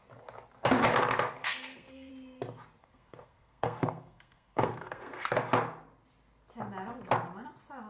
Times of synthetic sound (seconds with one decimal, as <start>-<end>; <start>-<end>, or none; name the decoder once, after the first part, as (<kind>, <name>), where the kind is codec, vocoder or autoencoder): 1.4-2.1 (codec, SNAC); 2.8-5.3